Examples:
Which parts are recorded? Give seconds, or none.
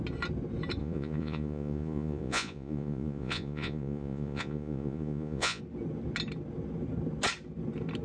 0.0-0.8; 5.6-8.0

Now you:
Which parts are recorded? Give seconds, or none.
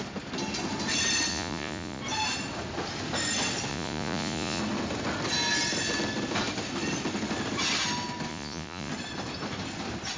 0.0-1.3; 2.0-3.7; 4.6-8.3; 8.9-10.2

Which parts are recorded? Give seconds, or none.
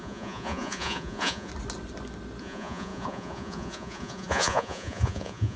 1.5-2.4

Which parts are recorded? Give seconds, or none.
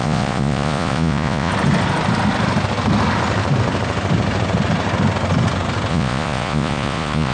1.5-5.9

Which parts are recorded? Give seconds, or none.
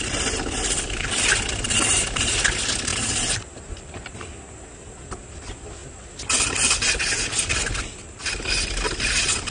0.0-9.5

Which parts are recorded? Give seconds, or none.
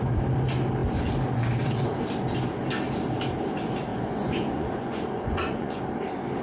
0.0-3.9; 5.8-6.4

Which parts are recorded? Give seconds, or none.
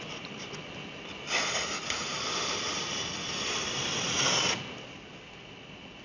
0.0-6.0